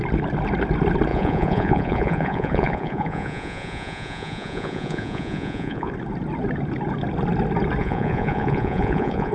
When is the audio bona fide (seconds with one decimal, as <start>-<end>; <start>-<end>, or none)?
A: 0.0-1.1; 5.9-7.8